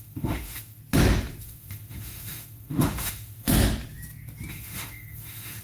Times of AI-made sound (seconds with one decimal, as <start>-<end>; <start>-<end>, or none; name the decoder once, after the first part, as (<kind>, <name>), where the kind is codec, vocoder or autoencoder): 0.0-0.8 (autoencoder, DAC-VAE); 1.4-3.5; 4.5-5.6